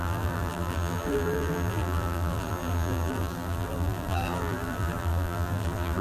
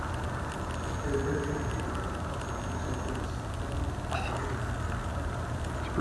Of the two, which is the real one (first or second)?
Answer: second